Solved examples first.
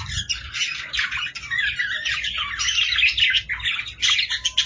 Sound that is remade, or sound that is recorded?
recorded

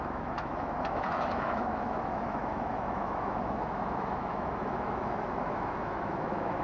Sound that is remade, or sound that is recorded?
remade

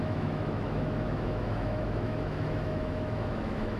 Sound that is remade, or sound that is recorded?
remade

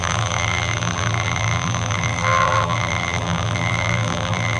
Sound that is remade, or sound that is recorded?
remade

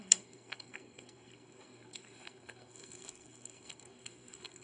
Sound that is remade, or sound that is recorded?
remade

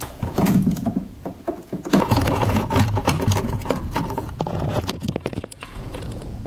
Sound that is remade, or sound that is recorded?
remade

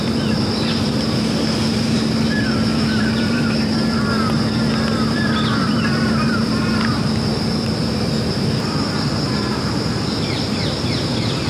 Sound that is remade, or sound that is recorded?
remade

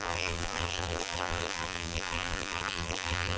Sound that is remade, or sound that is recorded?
remade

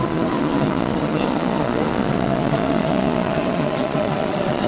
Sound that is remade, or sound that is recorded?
remade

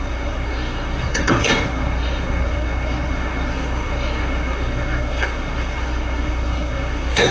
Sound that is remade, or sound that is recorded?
remade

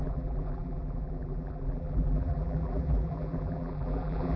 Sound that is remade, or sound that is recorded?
remade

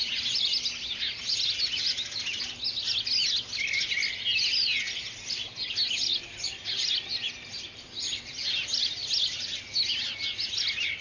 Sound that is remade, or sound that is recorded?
recorded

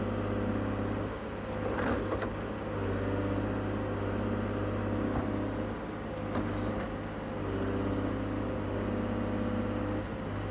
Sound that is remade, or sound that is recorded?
recorded